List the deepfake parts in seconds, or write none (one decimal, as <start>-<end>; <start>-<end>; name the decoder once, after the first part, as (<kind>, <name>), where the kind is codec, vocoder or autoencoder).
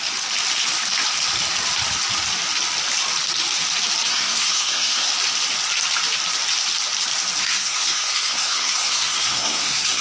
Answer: 4.1-5.1 (codec, SNAC); 7.4-10.0